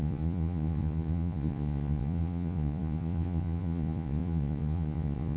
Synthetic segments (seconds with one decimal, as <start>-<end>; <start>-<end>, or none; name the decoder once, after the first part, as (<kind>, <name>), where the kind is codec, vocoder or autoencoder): 0.0-5.4 (vocoder, Vocos)